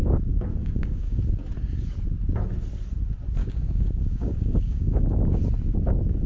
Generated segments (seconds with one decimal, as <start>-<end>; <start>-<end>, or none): 0.6-1.2; 3.4-5.4